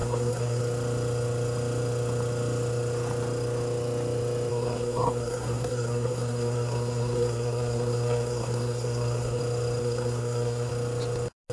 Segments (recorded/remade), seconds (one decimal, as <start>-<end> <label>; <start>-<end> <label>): 0.0-0.6 remade; 0.6-4.5 recorded; 4.5-9.4 remade; 9.4-9.8 recorded; 9.8-10.7 remade; 10.7-11.5 recorded